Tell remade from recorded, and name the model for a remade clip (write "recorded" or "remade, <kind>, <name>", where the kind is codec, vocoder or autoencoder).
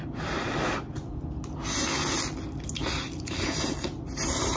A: recorded